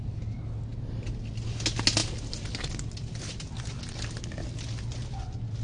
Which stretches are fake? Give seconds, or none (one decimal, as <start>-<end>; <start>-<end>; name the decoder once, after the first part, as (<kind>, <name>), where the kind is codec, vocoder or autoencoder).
none